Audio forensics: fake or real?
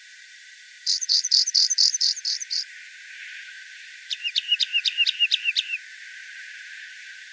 fake